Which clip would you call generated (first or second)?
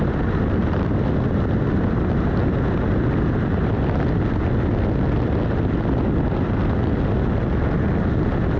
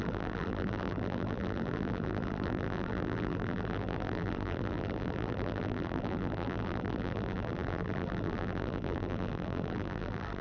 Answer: second